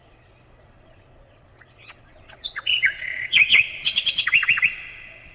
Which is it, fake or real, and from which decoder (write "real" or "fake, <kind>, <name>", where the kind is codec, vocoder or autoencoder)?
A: fake, vocoder, Vocos